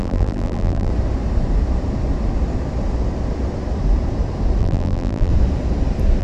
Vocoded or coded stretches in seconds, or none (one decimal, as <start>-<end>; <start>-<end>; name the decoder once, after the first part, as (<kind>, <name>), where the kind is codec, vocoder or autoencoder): 0.0-0.9 (vocoder, BigVGAN v2); 4.6-5.3